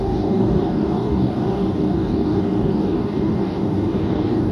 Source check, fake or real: fake